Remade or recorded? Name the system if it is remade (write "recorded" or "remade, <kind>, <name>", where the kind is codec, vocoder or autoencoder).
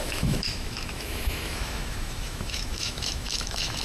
remade, autoencoder, DAC-VAE